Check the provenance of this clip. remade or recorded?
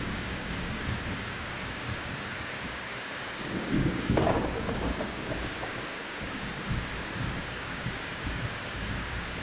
remade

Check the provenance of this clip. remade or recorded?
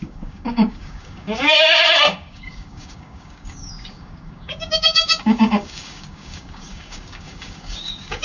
remade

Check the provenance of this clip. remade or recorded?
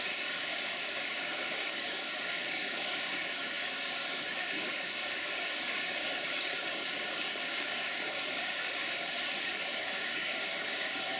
remade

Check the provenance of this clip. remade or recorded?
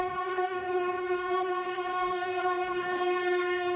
remade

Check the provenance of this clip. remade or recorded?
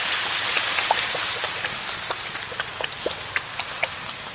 recorded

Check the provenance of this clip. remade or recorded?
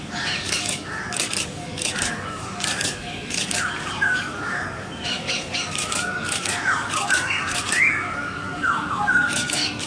remade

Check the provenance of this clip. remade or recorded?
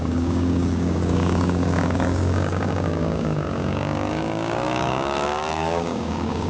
remade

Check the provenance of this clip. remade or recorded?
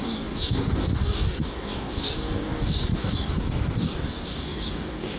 remade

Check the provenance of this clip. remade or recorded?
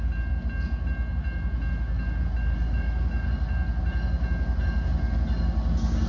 recorded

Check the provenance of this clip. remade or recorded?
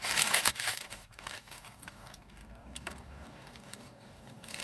remade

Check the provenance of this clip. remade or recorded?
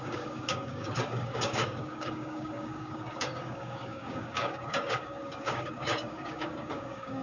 remade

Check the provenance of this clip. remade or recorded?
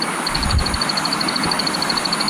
remade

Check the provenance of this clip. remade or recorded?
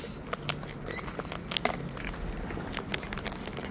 recorded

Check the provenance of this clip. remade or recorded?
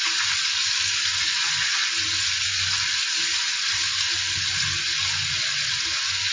recorded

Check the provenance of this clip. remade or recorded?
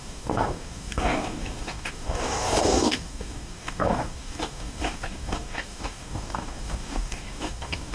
remade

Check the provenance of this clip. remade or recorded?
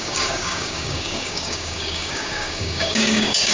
remade